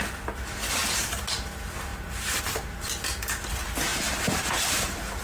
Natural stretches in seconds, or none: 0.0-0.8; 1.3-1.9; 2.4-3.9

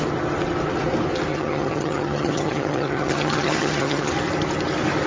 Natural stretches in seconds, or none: 0.0-1.3; 4.1-5.1

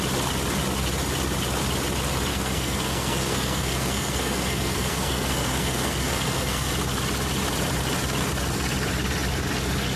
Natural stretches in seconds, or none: 0.0-2.3; 6.7-10.0

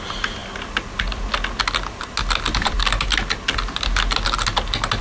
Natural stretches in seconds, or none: 0.0-5.0

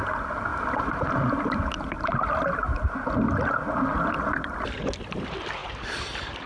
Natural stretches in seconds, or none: 0.0-0.5; 1.6-5.6